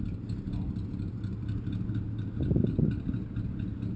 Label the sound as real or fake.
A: real